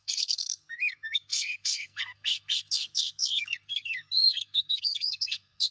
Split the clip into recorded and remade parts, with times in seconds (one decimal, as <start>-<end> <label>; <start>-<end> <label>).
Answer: 0.0-5.7 remade